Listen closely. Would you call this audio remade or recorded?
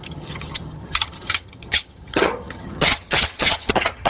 remade